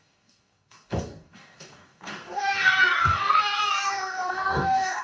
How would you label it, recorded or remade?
remade